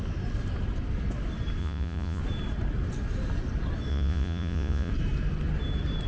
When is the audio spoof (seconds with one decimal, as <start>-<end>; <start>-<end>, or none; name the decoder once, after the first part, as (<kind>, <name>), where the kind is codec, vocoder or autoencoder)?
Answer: 1.6-2.2 (vocoder, Vocos); 3.9-4.9